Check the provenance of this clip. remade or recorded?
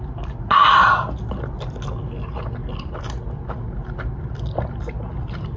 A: recorded